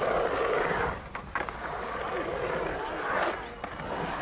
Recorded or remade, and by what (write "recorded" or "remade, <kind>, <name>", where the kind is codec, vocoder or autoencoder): recorded